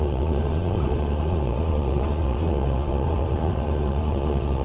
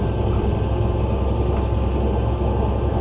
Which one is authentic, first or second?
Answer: second